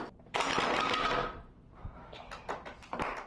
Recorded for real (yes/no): yes